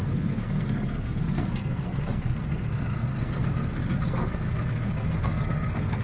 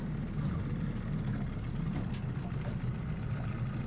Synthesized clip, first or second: first